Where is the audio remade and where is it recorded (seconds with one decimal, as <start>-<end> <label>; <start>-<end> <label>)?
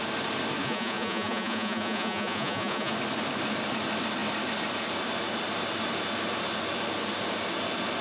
0.0-0.6 recorded; 0.6-2.9 remade; 2.9-8.0 recorded